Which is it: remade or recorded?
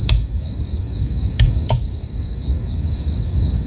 remade